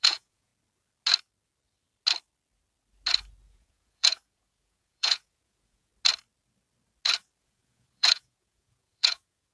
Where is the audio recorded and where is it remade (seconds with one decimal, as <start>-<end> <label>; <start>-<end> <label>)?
0.0-0.5 remade; 0.5-3.5 recorded; 3.5-5.9 remade; 5.9-7.4 recorded; 7.4-9.5 remade